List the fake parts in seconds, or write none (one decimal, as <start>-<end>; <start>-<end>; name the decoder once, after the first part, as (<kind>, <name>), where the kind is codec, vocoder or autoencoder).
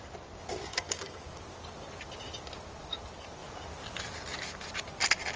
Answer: 0.7-1.2 (codec, DAC)